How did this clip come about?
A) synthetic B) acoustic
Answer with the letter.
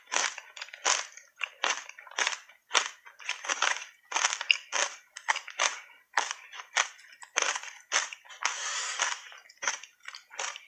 B